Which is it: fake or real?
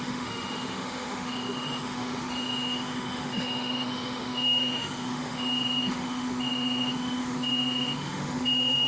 fake